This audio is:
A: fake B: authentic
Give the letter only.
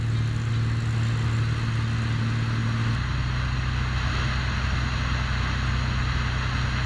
B